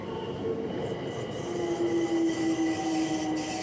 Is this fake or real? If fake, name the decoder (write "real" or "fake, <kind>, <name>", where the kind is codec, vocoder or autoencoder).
real